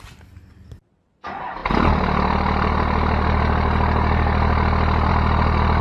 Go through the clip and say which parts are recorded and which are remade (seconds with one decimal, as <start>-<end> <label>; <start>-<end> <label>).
0.0-5.8 recorded